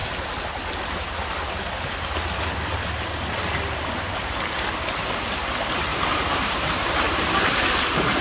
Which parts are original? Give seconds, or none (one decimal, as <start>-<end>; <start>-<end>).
0.0-5.9